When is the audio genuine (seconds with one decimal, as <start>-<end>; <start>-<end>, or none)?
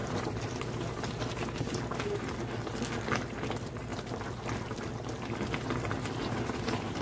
1.8-3.9; 4.9-6.2